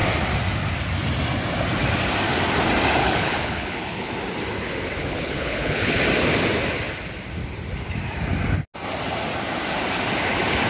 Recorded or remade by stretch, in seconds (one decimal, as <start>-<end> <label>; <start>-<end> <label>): 0.0-3.0 recorded; 3.0-4.1 remade; 4.1-5.0 recorded; 5.0-6.0 remade; 6.0-10.7 recorded